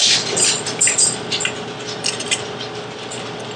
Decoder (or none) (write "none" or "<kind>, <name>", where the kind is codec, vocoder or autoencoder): none